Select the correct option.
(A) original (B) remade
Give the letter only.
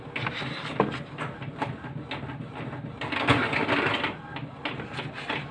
A